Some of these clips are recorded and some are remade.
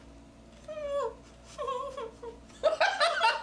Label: recorded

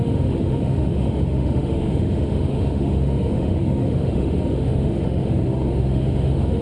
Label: remade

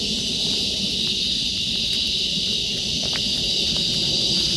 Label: remade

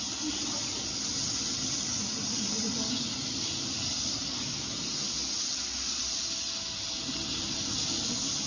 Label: recorded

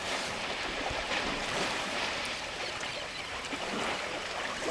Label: remade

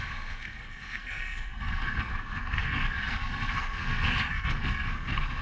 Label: remade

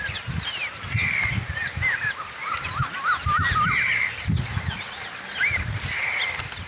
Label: recorded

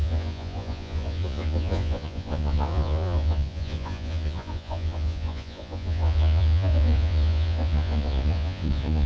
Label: remade